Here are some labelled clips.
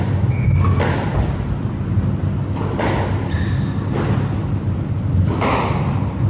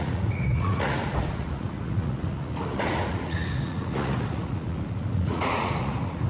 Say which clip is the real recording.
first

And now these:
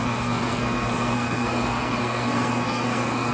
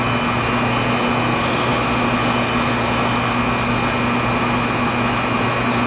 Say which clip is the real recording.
second